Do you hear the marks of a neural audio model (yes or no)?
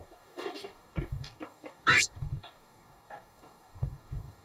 yes